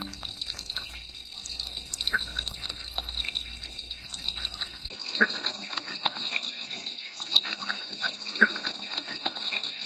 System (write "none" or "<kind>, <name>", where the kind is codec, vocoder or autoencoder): codec, SNAC